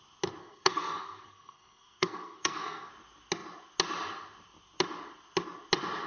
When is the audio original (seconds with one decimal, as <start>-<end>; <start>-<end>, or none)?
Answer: 0.0-0.4; 2.9-6.1